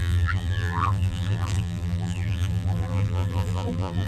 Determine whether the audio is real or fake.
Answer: fake